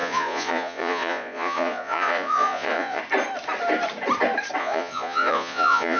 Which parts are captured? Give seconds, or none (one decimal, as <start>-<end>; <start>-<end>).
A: 3.0-4.6

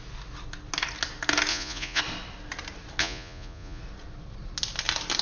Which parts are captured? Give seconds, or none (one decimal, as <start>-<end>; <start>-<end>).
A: 0.0-1.5; 2.0-3.0; 3.8-5.2

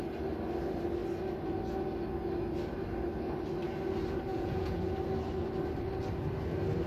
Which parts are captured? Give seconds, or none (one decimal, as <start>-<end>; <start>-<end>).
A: 0.0-4.3; 4.9-6.9